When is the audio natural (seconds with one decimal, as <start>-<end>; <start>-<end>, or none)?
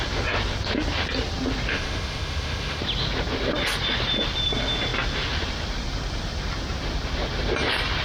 0.0-1.7; 2.8-8.0